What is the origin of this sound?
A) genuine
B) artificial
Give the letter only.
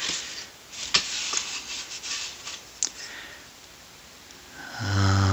A